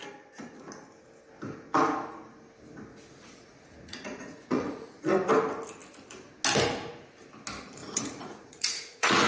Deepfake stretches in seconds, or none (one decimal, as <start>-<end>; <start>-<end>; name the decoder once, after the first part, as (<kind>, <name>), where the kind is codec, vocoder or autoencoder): 2.9-5.1 (vocoder, Vocos); 7.8-9.3